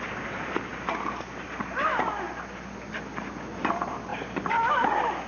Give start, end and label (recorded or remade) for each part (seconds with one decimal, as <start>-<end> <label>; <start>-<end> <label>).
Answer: 0.0-5.3 recorded

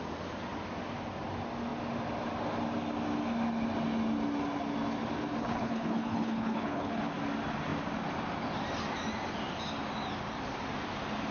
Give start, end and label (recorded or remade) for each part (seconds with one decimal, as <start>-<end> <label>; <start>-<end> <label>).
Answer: 0.0-5.4 recorded; 5.4-7.0 remade; 7.0-11.3 recorded

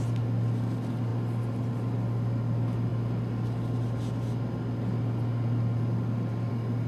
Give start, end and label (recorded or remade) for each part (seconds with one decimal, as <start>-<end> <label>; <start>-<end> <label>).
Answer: 0.0-6.9 recorded